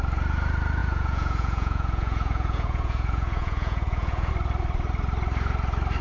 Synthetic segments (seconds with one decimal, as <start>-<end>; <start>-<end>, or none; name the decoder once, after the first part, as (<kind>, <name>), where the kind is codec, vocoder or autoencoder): 0.8-4.3 (vocoder, Vocos)